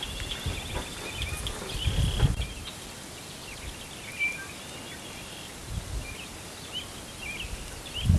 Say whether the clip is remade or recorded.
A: recorded